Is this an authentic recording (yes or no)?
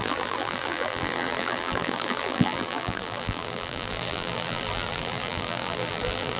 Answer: no